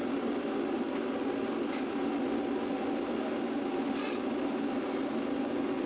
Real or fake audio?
real